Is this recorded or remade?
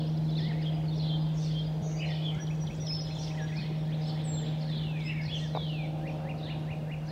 recorded